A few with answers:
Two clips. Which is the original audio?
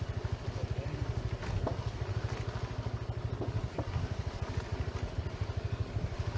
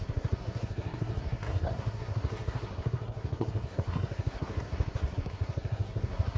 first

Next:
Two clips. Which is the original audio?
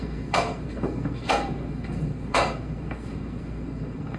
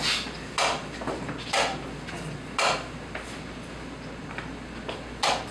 second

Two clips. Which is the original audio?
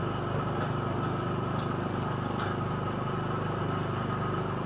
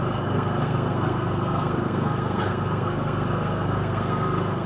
first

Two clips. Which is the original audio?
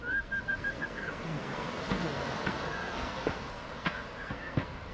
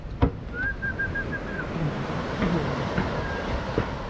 second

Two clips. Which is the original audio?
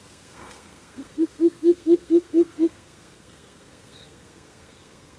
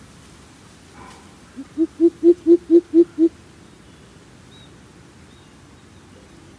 second